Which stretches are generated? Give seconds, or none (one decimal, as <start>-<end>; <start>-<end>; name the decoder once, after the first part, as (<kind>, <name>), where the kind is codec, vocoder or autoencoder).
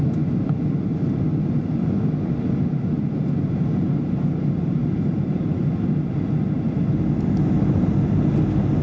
4.8-5.4 (vocoder, BigVGAN v2)